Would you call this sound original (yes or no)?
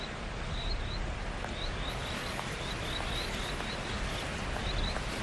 yes